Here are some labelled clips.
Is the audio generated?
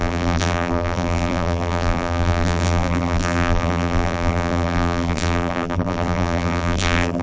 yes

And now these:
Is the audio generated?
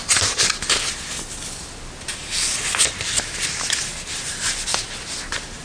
no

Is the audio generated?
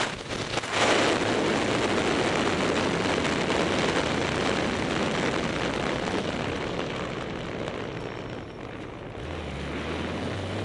no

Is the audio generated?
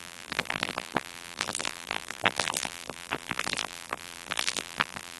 yes